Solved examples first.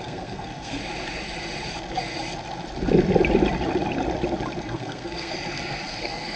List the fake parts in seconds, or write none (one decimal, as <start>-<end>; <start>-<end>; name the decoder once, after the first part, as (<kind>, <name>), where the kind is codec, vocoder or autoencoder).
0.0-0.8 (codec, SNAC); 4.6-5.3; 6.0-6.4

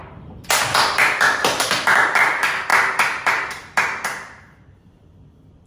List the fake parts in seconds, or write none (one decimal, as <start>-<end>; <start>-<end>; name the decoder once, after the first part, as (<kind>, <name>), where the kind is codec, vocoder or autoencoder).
none

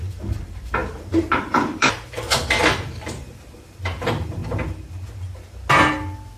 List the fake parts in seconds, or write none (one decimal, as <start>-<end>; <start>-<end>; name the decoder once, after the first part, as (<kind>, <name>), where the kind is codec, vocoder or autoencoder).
0.0-4.4 (vocoder, BigVGAN v2)

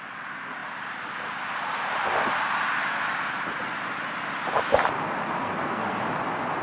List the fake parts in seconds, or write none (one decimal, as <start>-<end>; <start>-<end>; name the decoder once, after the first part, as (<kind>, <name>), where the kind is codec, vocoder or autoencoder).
5.4-6.0 (codec, SNAC)